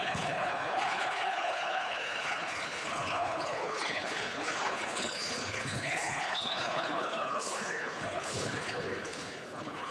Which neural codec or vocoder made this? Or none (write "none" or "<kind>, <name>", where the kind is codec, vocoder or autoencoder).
codec, HILCodec